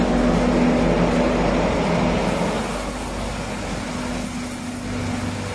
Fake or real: real